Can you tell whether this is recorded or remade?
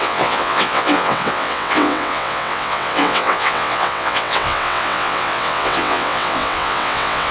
remade